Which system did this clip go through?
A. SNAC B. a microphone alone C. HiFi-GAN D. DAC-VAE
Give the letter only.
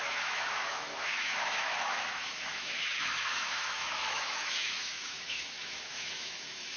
D